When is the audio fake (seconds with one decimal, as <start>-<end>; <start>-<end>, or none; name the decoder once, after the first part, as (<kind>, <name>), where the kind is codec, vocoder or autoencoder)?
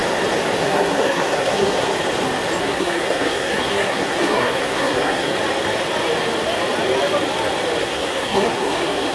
0.6-1.9 (codec, SNAC); 2.6-5.3; 7.8-9.1